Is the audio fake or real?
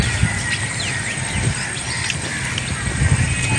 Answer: real